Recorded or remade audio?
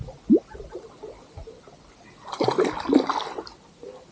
recorded